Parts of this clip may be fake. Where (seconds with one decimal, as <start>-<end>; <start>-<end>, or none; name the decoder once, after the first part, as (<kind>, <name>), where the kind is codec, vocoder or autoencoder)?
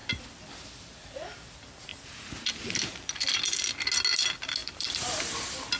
0.0-0.7 (vocoder, BigVGAN v2); 4.6-5.8